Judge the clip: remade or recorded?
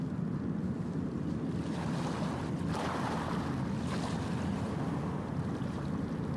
recorded